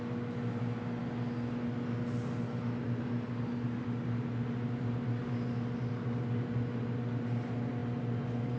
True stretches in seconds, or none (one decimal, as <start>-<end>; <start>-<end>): 0.0-8.6